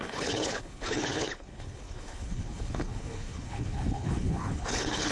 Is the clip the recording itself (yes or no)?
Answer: no